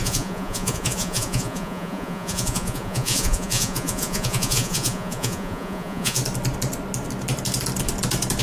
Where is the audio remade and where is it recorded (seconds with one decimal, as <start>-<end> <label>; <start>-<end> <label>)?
0.0-6.2 remade; 6.2-8.4 recorded